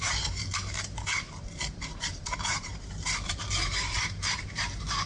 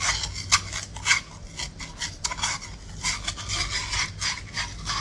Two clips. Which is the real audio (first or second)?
second